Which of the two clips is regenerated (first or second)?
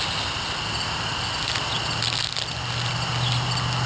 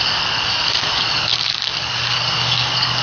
second